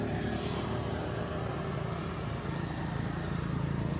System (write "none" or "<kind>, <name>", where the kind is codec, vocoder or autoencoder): none